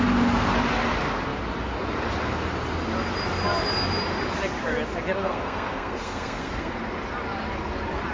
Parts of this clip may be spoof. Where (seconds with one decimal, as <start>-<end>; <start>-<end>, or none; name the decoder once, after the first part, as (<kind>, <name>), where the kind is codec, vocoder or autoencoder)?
5.2-6.7 (codec, SNAC)